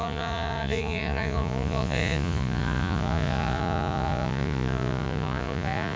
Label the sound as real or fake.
fake